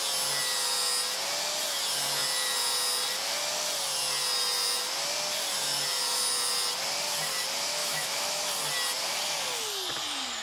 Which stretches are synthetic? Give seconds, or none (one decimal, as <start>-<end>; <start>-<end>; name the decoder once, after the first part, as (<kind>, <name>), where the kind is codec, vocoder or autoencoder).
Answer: 7.8-8.5 (autoencoder, DAC-VAE)